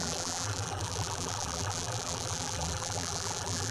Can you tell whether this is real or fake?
fake